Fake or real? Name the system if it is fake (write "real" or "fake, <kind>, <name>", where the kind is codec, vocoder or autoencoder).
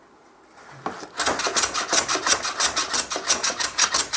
real